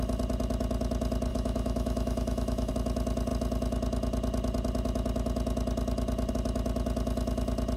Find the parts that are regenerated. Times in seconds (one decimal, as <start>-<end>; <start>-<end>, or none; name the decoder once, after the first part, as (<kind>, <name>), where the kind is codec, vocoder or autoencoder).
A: 1.3-2.7 (autoencoder, DAC-VAE)